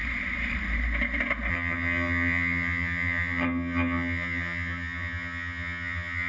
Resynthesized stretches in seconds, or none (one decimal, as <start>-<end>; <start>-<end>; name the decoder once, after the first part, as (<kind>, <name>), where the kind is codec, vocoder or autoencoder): 1.5-6.3 (vocoder, HiFi-GAN)